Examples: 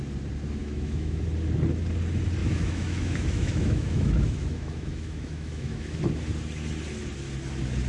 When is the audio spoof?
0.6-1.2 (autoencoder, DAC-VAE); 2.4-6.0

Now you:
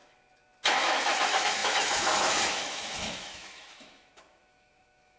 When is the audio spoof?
0.7-5.2 (autoencoder, DAC-VAE)

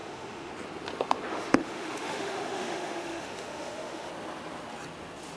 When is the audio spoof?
0.0-0.5 (autoencoder, DAC-VAE); 1.3-4.1

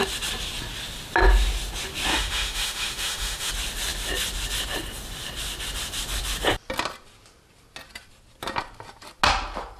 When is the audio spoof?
2.1-3.5 (autoencoder, DAC-VAE)